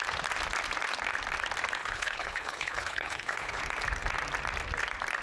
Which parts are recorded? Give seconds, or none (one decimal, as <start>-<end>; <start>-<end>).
0.0-1.8; 3.6-5.2